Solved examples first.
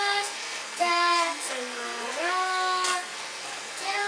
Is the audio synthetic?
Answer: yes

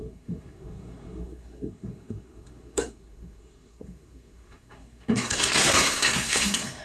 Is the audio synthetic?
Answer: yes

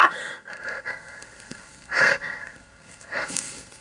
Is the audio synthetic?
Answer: yes